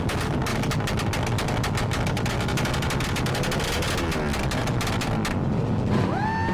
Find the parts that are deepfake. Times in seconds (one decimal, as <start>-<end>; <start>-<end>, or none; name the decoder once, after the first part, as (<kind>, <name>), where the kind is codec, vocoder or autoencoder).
none